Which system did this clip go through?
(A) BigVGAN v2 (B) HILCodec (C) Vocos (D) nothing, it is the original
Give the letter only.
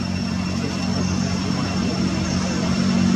A